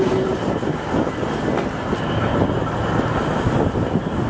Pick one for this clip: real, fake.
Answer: real